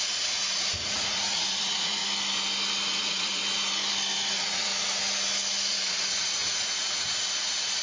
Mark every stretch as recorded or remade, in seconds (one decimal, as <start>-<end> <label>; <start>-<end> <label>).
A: 0.0-2.0 remade; 2.0-3.0 recorded; 3.0-3.4 remade; 3.4-4.3 recorded; 4.3-4.7 remade; 4.7-5.7 recorded; 5.7-7.8 remade